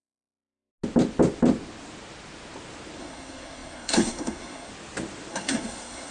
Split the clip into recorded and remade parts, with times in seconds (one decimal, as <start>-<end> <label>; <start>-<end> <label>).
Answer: 0.0-0.7 remade; 0.7-3.0 recorded; 3.0-4.7 remade; 4.7-5.3 recorded; 5.3-6.1 remade